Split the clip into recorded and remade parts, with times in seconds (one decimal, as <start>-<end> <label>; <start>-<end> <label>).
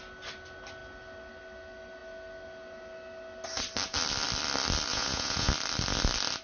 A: 0.0-4.9 recorded; 4.9-5.5 remade; 5.5-6.4 recorded